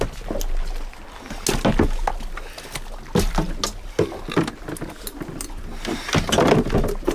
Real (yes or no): yes